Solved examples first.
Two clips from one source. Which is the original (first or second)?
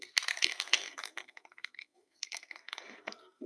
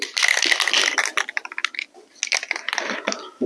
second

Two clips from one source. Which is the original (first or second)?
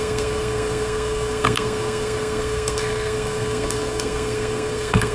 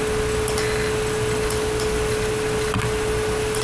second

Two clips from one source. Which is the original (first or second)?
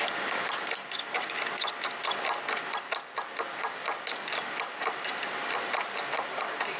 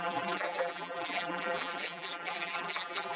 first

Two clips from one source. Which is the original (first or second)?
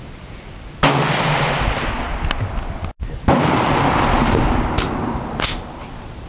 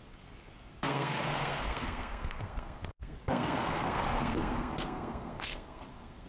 first